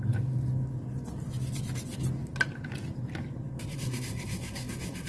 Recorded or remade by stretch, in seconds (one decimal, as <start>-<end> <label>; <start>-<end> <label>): 0.0-3.7 recorded; 3.7-5.1 remade

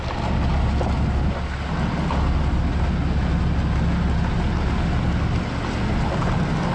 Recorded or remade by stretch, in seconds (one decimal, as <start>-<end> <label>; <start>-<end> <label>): 0.0-6.7 recorded

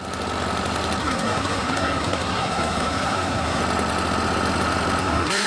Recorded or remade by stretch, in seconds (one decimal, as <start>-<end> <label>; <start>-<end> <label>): 0.0-1.0 recorded; 1.0-3.6 remade; 3.6-5.0 recorded; 5.0-5.5 remade

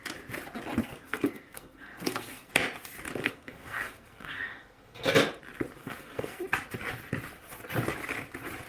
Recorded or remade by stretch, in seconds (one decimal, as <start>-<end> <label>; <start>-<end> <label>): 0.0-0.8 recorded; 0.8-2.5 remade; 2.5-3.2 recorded; 3.2-5.1 remade; 5.1-5.8 recorded; 5.8-6.4 remade; 6.4-8.7 recorded

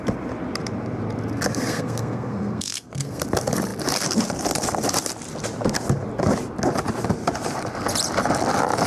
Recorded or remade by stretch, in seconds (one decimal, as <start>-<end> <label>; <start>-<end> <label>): 0.0-1.5 recorded; 1.5-3.2 remade; 3.2-8.9 recorded